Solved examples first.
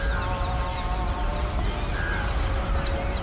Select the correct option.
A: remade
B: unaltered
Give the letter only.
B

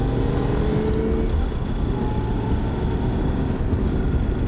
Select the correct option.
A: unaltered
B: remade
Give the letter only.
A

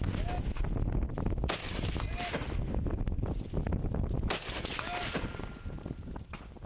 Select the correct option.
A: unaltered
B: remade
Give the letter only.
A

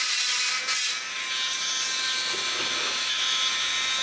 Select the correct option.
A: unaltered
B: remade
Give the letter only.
A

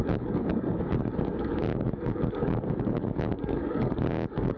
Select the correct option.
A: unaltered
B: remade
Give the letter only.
B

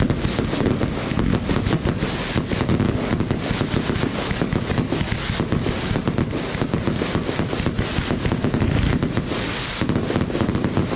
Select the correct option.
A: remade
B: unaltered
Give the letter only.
B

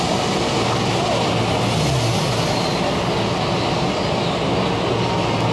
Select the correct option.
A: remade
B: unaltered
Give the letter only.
B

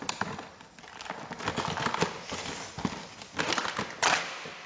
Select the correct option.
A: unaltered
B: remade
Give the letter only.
A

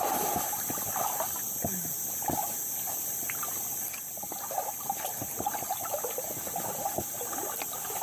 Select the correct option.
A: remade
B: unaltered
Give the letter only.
B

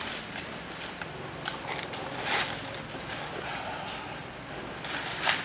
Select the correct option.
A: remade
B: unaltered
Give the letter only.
B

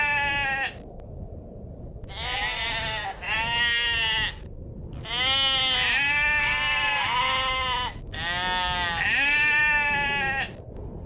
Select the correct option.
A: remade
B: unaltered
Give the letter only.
B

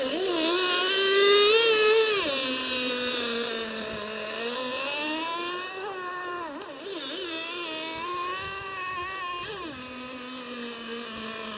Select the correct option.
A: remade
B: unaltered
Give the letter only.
B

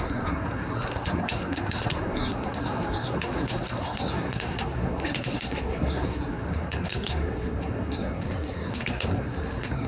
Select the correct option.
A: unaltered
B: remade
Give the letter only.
B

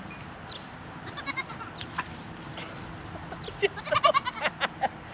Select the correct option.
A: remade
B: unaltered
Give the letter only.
B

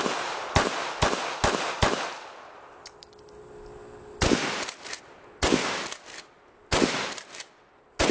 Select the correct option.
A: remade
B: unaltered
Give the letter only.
B